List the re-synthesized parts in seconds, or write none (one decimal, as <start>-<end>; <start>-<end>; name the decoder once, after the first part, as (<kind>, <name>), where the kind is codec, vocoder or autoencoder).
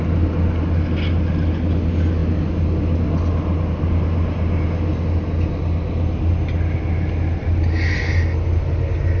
none